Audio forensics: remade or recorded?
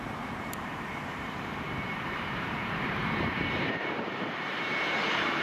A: remade